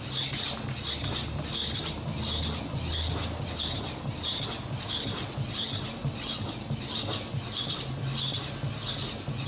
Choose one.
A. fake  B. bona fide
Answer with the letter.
B